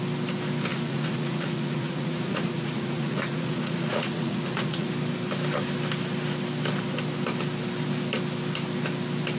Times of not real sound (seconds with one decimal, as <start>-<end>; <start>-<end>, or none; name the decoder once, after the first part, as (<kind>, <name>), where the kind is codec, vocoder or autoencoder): 0.7-4.9 (vocoder, Vocos)